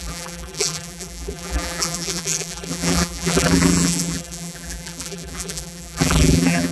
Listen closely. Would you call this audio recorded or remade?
remade